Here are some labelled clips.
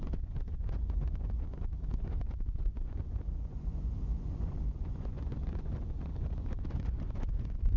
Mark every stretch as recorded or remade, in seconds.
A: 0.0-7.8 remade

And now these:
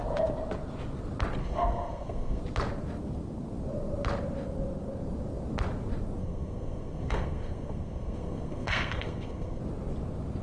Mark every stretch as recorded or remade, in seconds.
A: 0.0-1.4 recorded; 1.4-2.4 remade; 2.4-6.2 recorded; 6.2-9.6 remade; 9.6-10.4 recorded

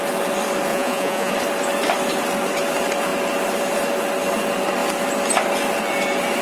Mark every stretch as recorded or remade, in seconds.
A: 0.0-0.7 recorded; 0.7-1.3 remade; 1.3-6.4 recorded

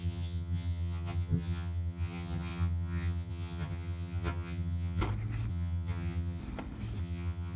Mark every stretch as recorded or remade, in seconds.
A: 0.0-5.0 remade; 5.0-5.5 recorded; 5.5-6.4 remade; 6.4-7.0 recorded; 7.0-7.6 remade

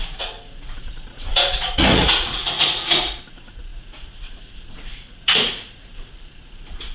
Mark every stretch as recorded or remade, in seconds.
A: 0.0-6.9 remade

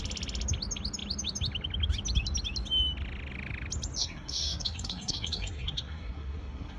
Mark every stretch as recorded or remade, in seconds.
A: 0.0-4.0 recorded; 4.0-6.8 remade

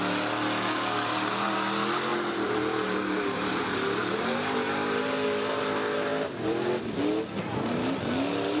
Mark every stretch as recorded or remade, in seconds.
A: 0.0-2.1 recorded; 2.1-5.0 remade; 5.0-8.6 recorded

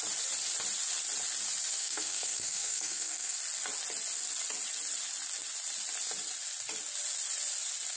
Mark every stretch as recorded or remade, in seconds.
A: 0.0-1.8 recorded; 1.8-3.4 remade; 3.4-8.0 recorded